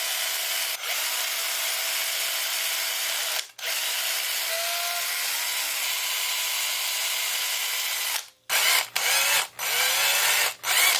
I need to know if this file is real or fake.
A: real